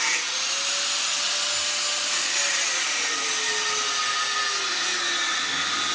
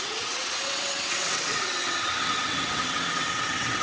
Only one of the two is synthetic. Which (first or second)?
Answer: second